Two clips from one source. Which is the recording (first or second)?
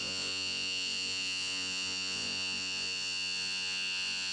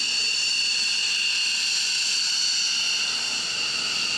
second